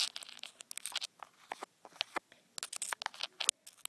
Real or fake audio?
real